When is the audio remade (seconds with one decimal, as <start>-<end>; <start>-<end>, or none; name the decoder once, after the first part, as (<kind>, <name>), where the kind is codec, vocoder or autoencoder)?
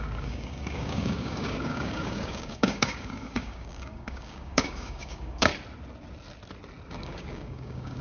0.0-5.5 (codec, DAC); 6.9-8.0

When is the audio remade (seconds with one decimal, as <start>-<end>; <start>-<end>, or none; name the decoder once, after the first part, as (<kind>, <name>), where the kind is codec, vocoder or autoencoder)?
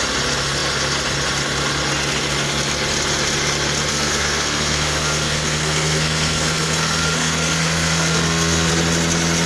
3.9-8.7 (codec, SNAC)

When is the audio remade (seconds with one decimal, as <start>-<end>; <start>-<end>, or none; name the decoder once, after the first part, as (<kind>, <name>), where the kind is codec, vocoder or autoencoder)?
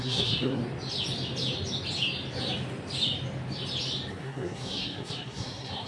0.0-0.6 (codec, SNAC); 4.1-5.9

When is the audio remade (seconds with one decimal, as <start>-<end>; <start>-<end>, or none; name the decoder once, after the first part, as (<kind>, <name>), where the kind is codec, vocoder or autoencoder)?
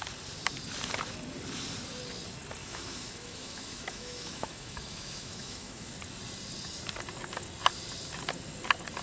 2.6-5.9 (autoencoder, DAC-VAE)